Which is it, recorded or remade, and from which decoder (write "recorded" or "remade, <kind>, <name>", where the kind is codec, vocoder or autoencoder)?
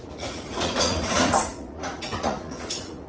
remade, vocoder, Vocos